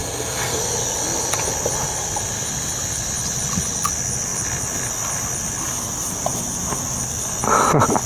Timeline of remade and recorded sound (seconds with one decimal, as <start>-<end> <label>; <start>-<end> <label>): 0.0-0.6 remade; 0.6-8.1 recorded